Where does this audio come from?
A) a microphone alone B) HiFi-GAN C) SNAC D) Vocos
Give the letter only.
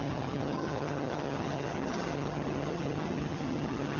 B